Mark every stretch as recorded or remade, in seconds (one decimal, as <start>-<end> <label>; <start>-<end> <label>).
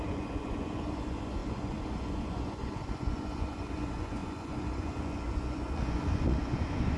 0.0-7.0 remade